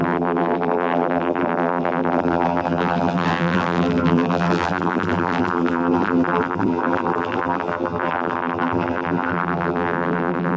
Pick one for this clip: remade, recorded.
remade